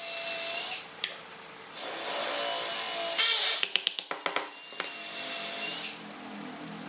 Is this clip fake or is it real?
real